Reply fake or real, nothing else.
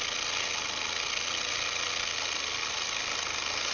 real